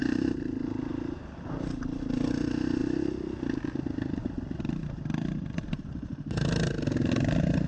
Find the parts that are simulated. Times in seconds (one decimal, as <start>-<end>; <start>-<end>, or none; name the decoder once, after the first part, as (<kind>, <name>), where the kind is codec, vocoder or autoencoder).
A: none